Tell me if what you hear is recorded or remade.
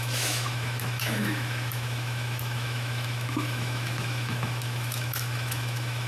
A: remade